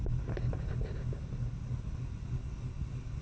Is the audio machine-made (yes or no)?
no